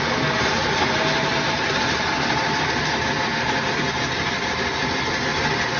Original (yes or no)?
yes